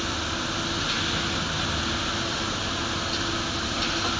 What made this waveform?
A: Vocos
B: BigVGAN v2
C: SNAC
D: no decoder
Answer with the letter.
D